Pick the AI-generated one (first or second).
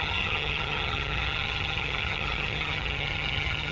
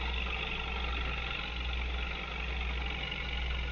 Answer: first